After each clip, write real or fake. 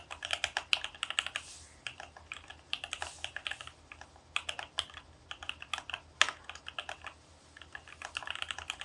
real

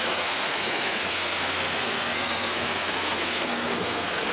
fake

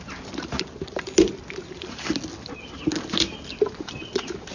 real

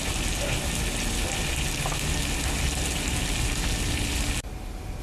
real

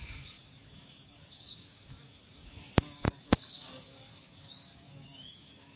fake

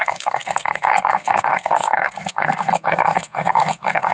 fake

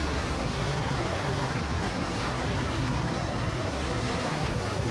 fake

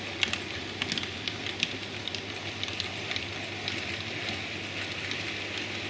real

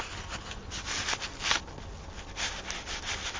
real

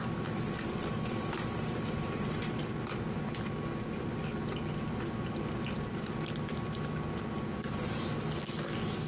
real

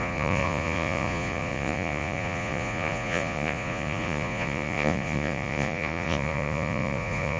fake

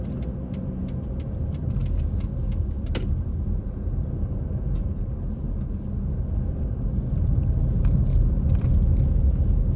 real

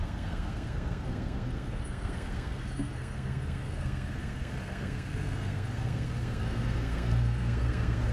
fake